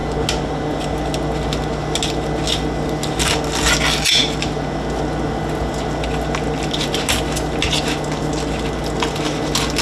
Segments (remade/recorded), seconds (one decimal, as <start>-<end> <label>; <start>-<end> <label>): 0.0-9.8 recorded